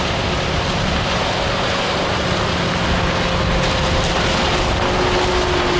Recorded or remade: recorded